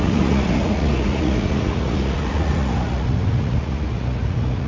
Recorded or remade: remade